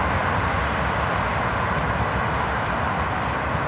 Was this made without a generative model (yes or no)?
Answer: yes